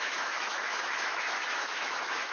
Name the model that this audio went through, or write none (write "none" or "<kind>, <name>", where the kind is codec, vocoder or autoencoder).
autoencoder, DAC-VAE